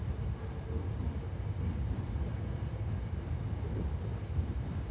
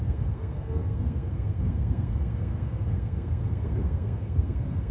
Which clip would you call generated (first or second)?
second